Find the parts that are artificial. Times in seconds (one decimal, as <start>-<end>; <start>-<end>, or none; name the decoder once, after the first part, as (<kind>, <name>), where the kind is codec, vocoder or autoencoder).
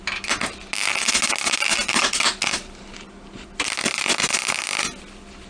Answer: none